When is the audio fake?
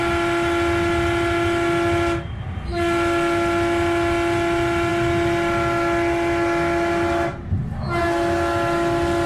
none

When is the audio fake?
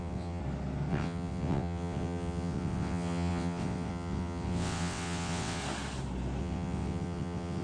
0.0-0.4 (vocoder, WaveNeXt); 0.9-5.6; 6.4-7.6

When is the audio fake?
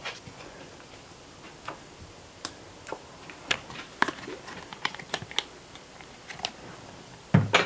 0.0-0.7 (vocoder, Vocos); 4.7-5.2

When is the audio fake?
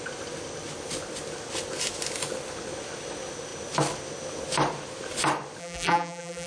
5.6-6.5 (vocoder, BigVGAN v2)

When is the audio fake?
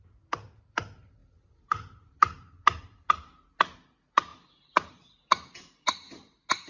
none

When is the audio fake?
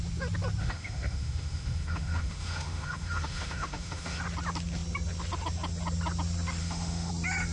0.6-4.2 (autoencoder, DAC-VAE); 6.6-7.1